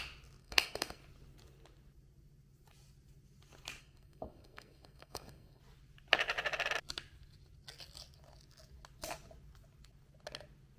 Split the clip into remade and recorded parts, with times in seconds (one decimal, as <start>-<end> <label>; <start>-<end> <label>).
0.0-0.4 recorded; 0.4-1.0 remade; 1.0-3.8 recorded; 3.8-5.6 remade; 5.6-10.8 recorded